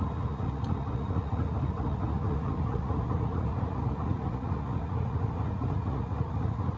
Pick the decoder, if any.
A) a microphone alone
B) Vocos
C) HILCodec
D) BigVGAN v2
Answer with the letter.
B